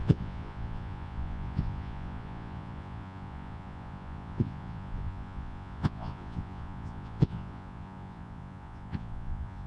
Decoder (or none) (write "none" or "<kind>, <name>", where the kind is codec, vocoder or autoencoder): vocoder, Vocos